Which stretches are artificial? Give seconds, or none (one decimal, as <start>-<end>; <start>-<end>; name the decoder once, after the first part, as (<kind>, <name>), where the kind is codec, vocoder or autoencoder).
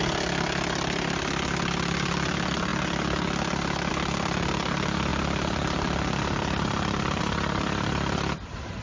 5.1-7.2 (vocoder, BigVGAN v2)